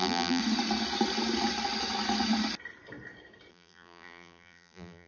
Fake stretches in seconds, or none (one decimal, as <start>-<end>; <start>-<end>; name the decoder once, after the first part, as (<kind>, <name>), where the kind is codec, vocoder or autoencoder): 0.0-0.4 (vocoder, BigVGAN v2); 3.5-5.1